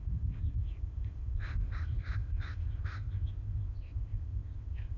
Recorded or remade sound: remade